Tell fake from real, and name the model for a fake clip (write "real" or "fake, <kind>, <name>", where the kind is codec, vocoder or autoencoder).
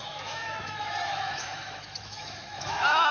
fake, autoencoder, DAC-VAE